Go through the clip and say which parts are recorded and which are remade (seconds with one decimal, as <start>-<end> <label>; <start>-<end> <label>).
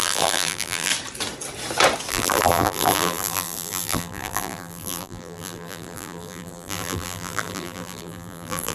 0.0-0.9 remade; 0.9-2.1 recorded; 2.1-8.7 remade